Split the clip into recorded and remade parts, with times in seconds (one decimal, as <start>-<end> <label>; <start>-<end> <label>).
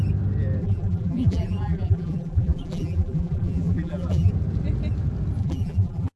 0.0-0.6 recorded; 0.6-4.3 remade; 4.3-5.4 recorded; 5.4-6.2 remade